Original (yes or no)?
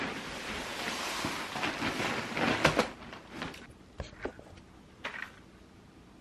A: yes